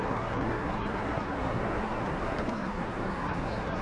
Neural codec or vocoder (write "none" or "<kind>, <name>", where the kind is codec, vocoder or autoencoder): codec, SNAC